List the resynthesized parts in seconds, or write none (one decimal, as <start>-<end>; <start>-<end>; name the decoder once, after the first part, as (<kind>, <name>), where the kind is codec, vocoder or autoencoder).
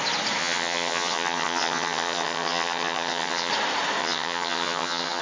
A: 0.4-3.5 (vocoder, HiFi-GAN); 4.0-5.2